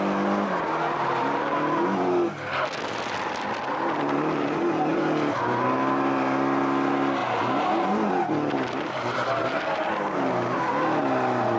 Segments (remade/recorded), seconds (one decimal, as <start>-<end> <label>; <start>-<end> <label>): 0.0-4.9 recorded; 4.9-5.4 remade; 5.4-7.2 recorded; 7.2-8.1 remade; 8.1-11.6 recorded